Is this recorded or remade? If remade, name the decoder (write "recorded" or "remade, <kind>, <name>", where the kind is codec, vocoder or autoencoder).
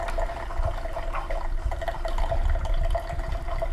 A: recorded